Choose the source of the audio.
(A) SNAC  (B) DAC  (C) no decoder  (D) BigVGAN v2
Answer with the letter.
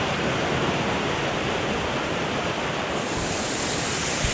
C